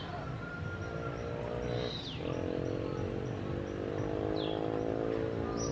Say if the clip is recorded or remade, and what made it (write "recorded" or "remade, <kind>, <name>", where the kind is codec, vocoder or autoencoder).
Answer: recorded